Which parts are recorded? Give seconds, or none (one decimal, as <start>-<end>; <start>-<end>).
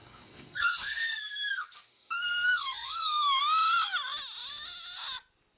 3.4-5.6